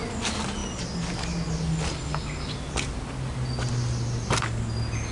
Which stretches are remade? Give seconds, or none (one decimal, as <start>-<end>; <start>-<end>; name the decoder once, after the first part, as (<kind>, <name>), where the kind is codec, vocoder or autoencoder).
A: none

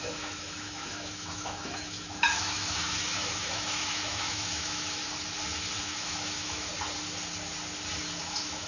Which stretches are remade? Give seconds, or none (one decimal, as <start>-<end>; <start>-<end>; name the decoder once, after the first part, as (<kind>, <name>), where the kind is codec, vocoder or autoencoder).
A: 0.0-5.0 (autoencoder, DAC-VAE); 5.8-6.7; 8.2-8.7

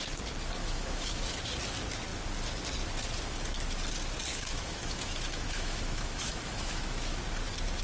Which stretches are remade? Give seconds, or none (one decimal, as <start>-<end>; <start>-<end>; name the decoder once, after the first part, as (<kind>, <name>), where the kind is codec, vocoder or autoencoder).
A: 0.6-1.4 (autoencoder, DAC-VAE); 4.3-7.2

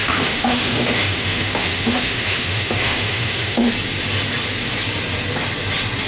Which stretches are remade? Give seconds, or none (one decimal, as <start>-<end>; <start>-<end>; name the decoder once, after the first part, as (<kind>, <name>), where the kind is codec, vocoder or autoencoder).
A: 0.0-3.7 (autoencoder, DAC-VAE)

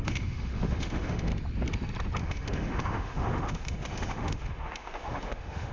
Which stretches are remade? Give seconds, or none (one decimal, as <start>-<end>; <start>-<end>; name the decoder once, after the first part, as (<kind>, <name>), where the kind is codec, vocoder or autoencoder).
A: 0.0-1.3 (autoencoder, DAC-VAE); 2.2-5.7

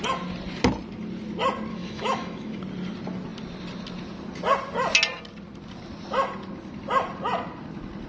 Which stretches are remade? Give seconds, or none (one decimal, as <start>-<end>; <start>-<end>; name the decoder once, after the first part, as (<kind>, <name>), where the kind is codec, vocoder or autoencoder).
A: 1.7-2.6 (autoencoder, DAC-VAE)